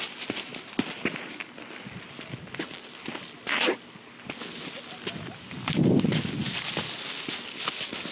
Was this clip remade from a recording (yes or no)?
no